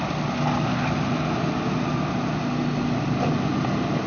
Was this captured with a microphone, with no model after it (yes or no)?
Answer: yes